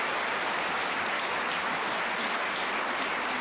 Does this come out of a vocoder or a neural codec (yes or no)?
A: no